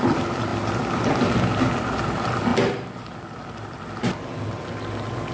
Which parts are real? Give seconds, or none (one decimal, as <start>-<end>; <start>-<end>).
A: 0.0-5.3